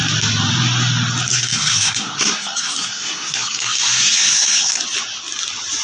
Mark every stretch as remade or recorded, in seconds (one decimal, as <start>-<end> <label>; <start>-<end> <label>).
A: 0.0-1.3 recorded; 1.3-4.8 remade; 4.8-5.8 recorded